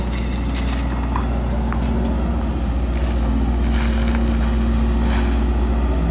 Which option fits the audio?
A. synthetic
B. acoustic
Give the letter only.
B